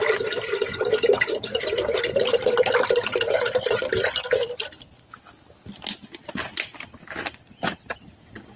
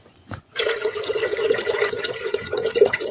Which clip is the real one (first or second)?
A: first